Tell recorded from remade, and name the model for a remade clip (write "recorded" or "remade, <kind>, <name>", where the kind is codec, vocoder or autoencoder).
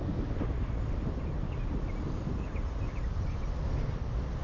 recorded